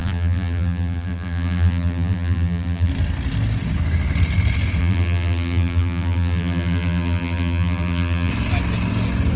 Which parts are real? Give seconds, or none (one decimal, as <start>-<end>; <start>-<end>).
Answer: 2.9-4.8; 8.3-9.4